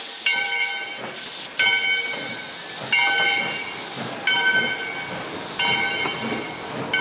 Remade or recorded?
recorded